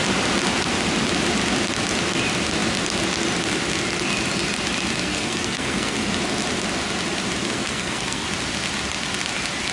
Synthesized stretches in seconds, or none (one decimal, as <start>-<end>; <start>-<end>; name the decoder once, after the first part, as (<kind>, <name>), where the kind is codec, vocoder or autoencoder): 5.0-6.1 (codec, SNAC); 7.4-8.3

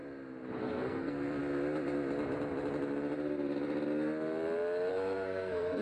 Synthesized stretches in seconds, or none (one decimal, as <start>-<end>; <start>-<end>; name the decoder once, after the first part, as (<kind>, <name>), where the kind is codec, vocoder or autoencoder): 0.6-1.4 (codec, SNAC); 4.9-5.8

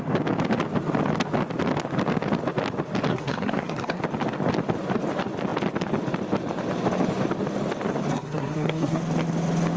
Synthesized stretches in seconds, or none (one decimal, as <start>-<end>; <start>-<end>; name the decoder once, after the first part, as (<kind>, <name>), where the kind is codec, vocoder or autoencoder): 3.1-4.0 (codec, SNAC); 8.1-9.0

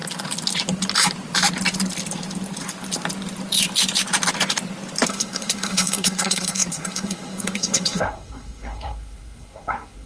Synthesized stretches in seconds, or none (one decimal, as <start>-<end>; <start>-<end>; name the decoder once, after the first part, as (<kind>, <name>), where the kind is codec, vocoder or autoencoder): 5.1-10.1 (codec, SNAC)

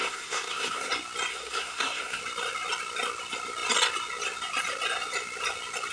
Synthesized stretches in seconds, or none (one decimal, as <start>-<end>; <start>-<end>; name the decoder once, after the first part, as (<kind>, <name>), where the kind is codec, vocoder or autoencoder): 0.0-0.9 (codec, SNAC); 1.3-2.2

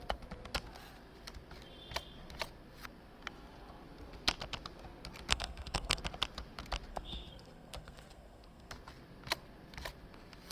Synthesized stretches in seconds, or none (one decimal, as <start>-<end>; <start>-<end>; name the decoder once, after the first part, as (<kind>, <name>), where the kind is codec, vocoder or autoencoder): 5.3-6.0 (codec, SNAC); 6.9-8.7

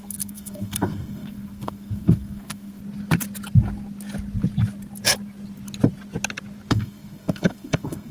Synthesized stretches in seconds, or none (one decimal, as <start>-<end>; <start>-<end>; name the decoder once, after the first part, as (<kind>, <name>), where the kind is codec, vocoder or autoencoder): 0.0-2.8 (codec, SNAC); 6.7-8.1

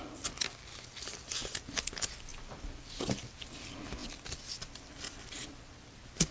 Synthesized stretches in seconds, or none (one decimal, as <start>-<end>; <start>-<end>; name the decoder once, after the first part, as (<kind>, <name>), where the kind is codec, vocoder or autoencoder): none